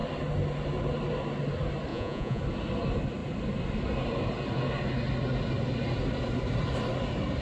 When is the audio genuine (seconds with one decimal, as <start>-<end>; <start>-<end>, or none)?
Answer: 0.0-1.9; 2.4-7.4